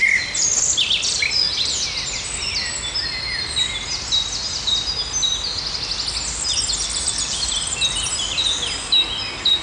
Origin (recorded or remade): recorded